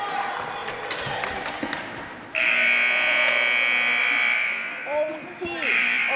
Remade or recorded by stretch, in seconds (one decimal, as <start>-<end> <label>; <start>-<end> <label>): 0.0-4.0 recorded; 4.0-6.2 remade